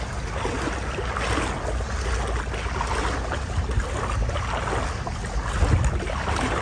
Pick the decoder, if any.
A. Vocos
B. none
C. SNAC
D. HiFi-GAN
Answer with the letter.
B